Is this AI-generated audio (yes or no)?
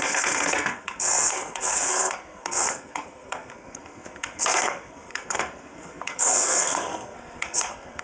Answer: yes